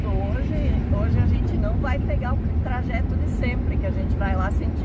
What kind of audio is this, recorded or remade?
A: recorded